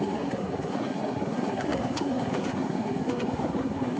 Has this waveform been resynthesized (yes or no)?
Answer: yes